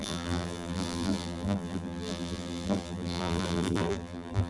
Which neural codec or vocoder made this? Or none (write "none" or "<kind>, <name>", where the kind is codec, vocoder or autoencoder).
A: vocoder, BigVGAN v2